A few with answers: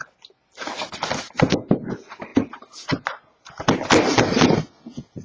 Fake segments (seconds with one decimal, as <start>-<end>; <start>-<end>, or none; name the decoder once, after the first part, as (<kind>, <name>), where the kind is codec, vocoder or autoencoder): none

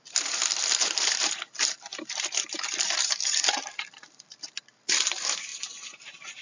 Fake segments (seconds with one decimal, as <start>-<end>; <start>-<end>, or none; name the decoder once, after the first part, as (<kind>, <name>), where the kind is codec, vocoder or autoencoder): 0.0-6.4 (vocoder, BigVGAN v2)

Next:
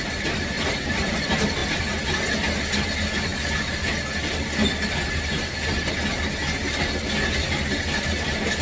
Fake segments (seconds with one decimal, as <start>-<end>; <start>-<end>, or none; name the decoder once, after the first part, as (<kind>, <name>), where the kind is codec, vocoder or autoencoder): none

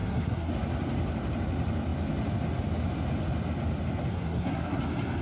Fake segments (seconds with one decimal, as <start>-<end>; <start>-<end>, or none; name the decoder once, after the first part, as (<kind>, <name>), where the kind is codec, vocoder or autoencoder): 0.0-0.5 (codec, SNAC); 4.1-4.8

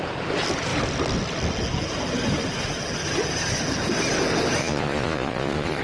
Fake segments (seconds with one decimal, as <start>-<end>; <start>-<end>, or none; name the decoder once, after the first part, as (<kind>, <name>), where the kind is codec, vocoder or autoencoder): 4.6-5.8 (vocoder, Vocos)

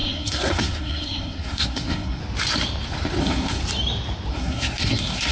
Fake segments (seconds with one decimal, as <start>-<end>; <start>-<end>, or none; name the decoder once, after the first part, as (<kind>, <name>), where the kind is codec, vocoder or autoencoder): 0.0-2.2 (codec, SNAC); 3.2-3.6; 4.3-5.3

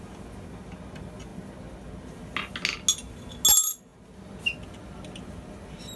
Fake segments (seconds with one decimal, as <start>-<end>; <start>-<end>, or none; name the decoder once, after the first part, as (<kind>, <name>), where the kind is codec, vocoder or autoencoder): none